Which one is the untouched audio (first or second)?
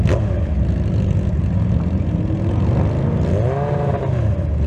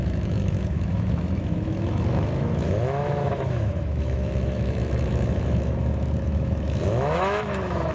first